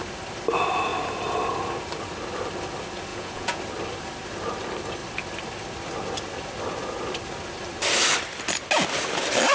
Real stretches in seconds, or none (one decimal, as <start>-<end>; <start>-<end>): 0.0-3.1; 3.6-9.5